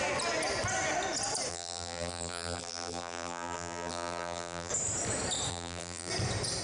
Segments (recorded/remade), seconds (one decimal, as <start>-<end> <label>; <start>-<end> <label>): 0.0-1.5 recorded; 1.5-4.7 remade; 4.7-5.5 recorded; 5.5-6.1 remade; 6.1-6.6 recorded